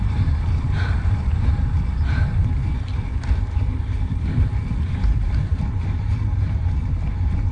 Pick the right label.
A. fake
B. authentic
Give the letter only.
A